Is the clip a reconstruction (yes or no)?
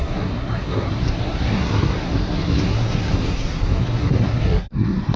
yes